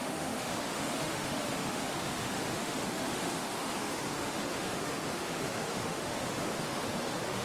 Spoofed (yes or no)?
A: yes